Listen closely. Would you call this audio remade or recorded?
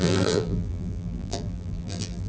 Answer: remade